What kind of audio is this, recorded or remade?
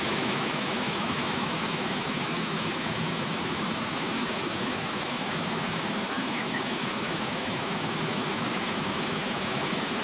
remade